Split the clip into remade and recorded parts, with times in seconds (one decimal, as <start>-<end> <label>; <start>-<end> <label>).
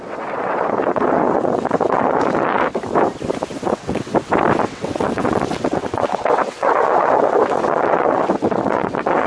0.0-2.8 remade; 2.8-3.6 recorded; 3.6-4.1 remade; 4.1-4.6 recorded; 4.6-9.3 remade